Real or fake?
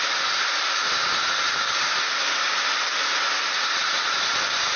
real